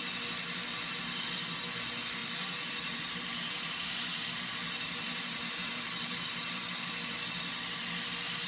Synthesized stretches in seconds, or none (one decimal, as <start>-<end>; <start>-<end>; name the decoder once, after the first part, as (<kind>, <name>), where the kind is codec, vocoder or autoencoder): 2.2-6.9 (vocoder, BigVGAN v2)